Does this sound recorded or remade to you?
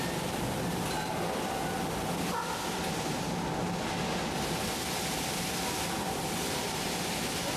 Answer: recorded